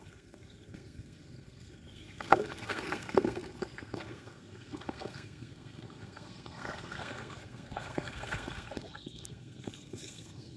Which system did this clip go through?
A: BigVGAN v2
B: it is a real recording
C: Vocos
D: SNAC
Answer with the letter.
D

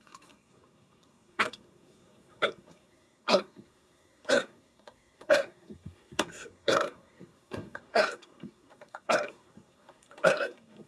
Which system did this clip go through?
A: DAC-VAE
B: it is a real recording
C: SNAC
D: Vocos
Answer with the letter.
C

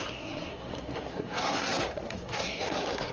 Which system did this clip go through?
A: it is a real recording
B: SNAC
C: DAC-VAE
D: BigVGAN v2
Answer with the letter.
B